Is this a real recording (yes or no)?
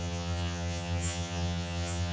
no